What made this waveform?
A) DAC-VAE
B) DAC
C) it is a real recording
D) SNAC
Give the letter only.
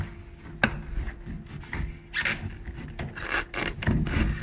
C